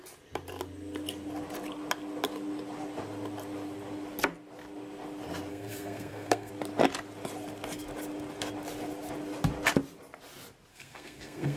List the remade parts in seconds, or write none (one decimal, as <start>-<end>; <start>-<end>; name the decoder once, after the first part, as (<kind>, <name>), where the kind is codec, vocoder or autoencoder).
5.5-6.5 (codec, SNAC); 10.7-11.6